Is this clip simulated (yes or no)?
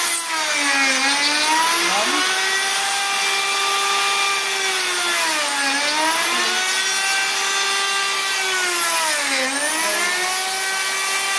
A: no